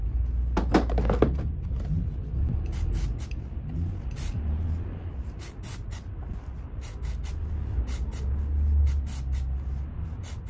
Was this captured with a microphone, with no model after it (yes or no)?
yes